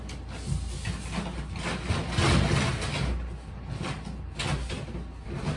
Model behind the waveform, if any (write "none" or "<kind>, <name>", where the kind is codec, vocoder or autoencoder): none